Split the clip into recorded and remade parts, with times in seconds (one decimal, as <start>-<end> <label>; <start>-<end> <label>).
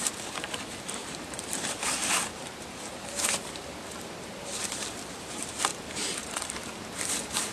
0.0-7.5 remade